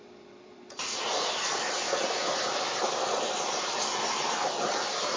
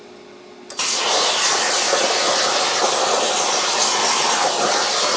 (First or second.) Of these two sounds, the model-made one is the first